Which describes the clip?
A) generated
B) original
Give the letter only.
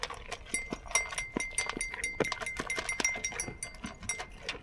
B